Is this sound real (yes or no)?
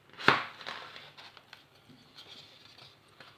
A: yes